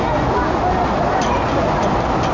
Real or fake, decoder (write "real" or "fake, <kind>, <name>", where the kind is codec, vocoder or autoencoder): real